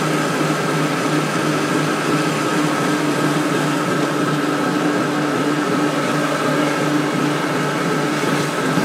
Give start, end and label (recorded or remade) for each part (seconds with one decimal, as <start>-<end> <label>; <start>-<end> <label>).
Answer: 0.0-8.8 recorded